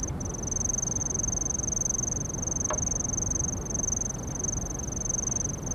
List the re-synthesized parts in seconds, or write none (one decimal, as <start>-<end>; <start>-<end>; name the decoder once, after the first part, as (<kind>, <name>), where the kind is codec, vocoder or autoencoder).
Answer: none